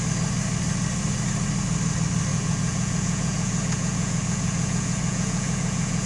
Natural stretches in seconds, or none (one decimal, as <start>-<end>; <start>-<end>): 0.0-2.3